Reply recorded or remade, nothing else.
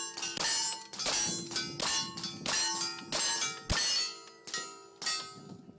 recorded